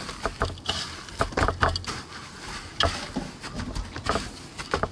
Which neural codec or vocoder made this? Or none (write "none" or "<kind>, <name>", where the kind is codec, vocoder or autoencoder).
none